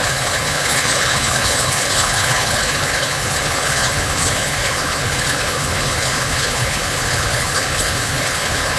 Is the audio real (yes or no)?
no